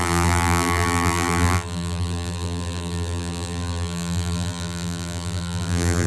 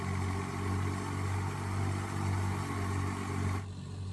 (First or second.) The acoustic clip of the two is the second